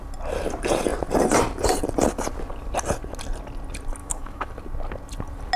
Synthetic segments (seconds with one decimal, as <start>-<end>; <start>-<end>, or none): 4.0-4.5